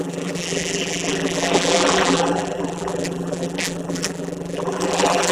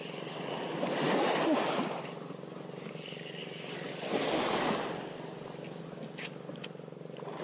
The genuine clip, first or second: second